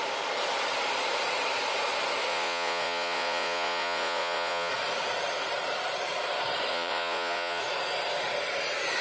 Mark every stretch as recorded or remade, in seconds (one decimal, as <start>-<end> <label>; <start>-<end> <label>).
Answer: 0.0-2.3 recorded; 2.3-4.7 remade; 4.7-6.7 recorded; 6.7-7.6 remade; 7.6-9.0 recorded